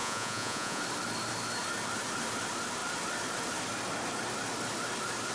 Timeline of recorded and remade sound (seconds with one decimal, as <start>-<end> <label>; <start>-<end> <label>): 0.0-0.8 remade; 0.8-5.3 recorded